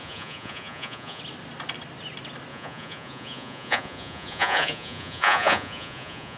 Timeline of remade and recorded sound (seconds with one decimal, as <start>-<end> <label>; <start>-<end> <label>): 0.0-1.2 remade; 1.2-2.5 recorded; 2.5-6.4 remade